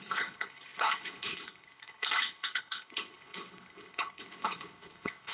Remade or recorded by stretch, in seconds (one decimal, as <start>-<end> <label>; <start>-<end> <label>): 0.0-5.3 remade